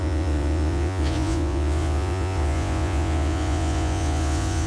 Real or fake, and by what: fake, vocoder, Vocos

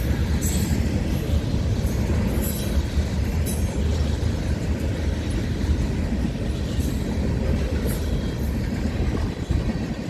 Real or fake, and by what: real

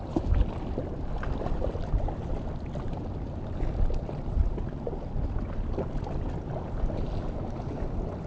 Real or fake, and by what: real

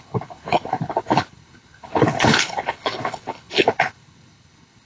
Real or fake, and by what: fake, codec, HILCodec